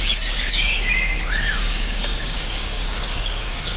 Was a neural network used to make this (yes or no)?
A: yes